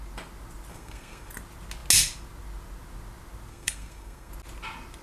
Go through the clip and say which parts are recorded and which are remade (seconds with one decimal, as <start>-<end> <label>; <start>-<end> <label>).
0.0-0.7 recorded; 0.7-1.3 remade; 1.3-3.5 recorded; 3.5-4.3 remade; 4.3-5.0 recorded